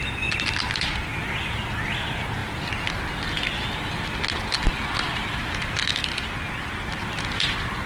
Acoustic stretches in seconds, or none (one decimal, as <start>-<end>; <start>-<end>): 0.0-7.9